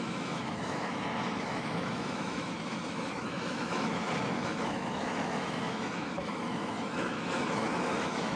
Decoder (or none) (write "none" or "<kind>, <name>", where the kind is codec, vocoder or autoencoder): autoencoder, DAC-VAE